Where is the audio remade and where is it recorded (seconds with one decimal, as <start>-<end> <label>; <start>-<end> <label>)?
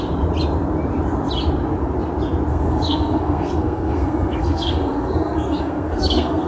0.0-2.5 recorded; 2.5-6.5 remade